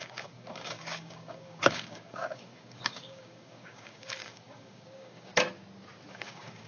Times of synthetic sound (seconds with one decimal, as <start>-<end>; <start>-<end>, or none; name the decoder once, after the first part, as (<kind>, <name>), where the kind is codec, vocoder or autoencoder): 0.0-5.3 (codec, DAC); 6.1-6.7